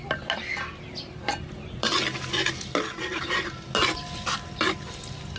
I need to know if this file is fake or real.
real